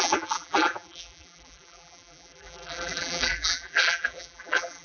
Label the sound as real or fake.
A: fake